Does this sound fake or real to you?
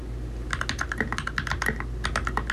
real